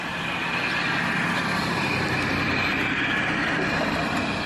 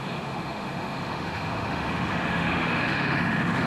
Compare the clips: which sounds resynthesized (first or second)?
second